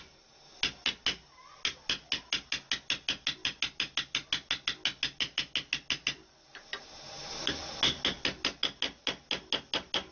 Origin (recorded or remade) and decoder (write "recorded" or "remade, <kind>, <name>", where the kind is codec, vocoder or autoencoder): recorded